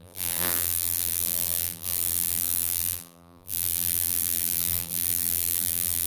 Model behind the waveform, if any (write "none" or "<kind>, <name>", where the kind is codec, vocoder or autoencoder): vocoder, BigVGAN v2